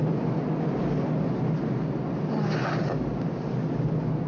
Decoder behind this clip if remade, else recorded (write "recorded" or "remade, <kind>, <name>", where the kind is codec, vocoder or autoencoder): recorded